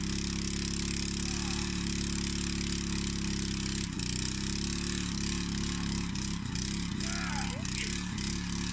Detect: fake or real real